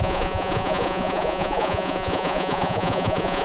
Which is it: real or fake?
fake